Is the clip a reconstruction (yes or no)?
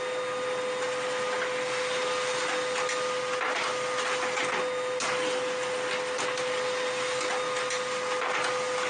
no